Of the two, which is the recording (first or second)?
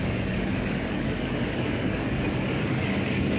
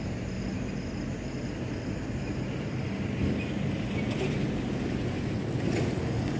second